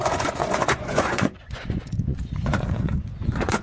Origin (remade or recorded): remade